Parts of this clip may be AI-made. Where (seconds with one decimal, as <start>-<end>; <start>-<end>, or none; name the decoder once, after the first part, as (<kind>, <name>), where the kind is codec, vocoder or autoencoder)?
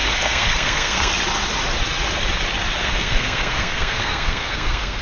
0.0-1.1 (codec, SNAC); 2.8-5.0